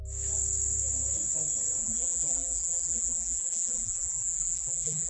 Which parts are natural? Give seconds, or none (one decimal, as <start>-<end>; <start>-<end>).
0.0-1.8